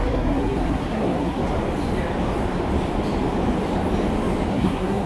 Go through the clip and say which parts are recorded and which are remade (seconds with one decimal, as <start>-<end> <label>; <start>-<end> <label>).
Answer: 0.0-1.4 remade; 1.4-4.5 recorded; 4.5-5.1 remade